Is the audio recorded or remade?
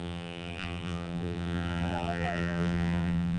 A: remade